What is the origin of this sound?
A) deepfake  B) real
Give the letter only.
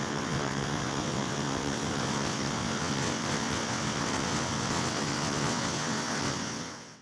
A